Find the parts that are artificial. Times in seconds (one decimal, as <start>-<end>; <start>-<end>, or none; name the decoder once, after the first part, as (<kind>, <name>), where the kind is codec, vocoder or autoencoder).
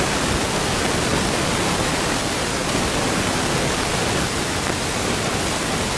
none